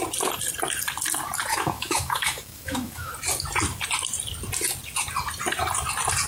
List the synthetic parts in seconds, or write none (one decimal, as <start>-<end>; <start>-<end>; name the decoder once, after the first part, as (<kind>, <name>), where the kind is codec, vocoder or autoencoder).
1.5-3.1 (autoencoder, DAC-VAE)